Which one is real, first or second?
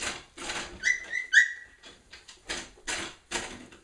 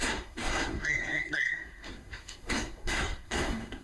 first